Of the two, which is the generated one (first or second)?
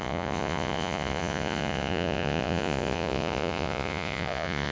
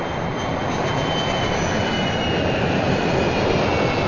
first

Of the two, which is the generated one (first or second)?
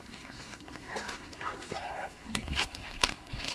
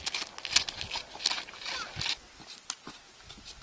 first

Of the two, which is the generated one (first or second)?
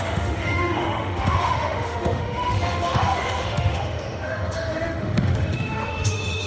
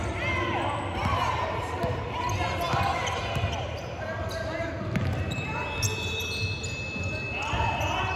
first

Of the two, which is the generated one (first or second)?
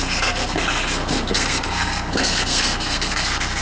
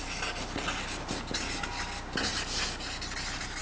first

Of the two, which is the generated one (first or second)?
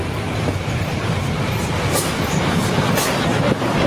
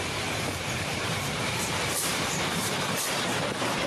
second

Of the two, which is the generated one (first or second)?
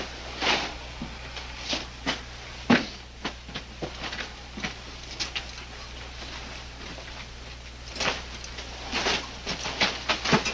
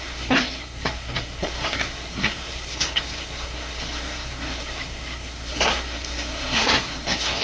second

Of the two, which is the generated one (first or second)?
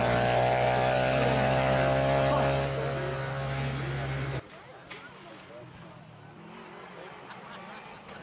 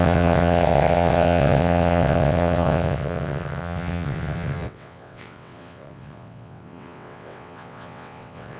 second